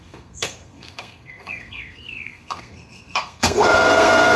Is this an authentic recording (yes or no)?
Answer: no